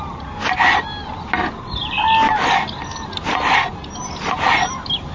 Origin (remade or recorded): recorded